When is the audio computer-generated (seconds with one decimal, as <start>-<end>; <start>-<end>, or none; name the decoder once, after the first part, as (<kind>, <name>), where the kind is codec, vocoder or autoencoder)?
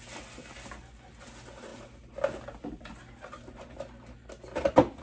none